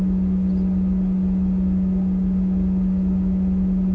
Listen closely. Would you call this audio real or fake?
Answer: real